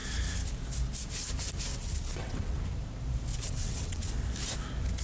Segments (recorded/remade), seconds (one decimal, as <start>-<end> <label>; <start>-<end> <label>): 0.0-1.7 recorded; 1.7-2.6 remade; 2.6-3.3 recorded; 3.3-4.1 remade; 4.1-5.0 recorded